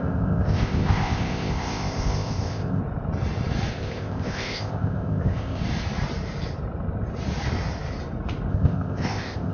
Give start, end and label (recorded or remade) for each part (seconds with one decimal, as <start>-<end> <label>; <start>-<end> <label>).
0.0-2.8 remade; 2.8-3.7 recorded; 3.7-5.6 remade; 5.6-8.5 recorded; 8.5-9.5 remade